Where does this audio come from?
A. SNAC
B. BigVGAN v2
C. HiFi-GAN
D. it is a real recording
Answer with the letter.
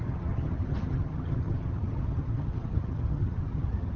C